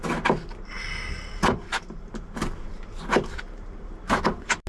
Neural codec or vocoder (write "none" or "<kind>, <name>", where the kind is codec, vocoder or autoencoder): none